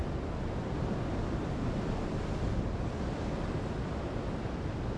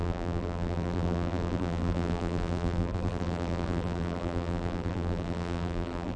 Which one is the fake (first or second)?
second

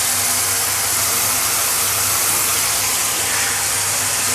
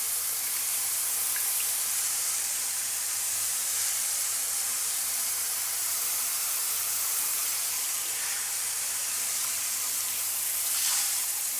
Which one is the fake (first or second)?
second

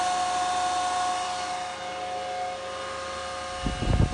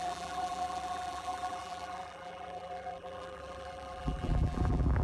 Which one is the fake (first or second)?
second